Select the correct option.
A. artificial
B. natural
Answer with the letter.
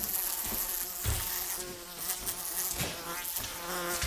B